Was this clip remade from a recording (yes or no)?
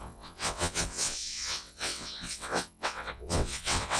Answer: yes